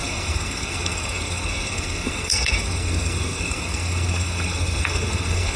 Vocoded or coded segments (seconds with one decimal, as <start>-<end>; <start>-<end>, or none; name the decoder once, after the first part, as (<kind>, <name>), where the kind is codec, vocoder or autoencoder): 0.0-5.6 (codec, SNAC)